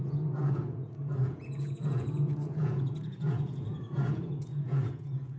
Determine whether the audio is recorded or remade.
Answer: remade